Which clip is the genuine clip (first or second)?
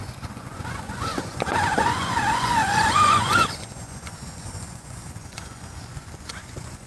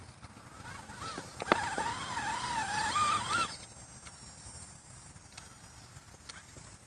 second